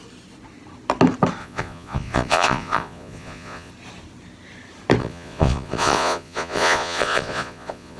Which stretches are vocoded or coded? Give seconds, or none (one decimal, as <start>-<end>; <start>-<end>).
1.4-3.7; 5.0-8.0

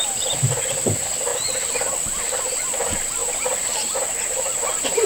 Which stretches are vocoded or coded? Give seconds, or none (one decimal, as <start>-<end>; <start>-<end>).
3.2-3.8